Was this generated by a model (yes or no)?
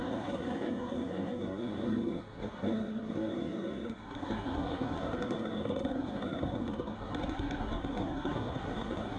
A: yes